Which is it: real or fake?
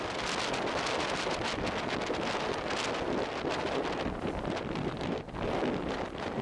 real